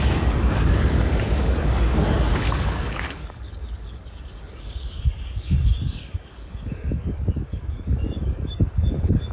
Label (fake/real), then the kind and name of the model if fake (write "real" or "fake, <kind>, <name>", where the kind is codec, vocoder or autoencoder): fake, codec, DAC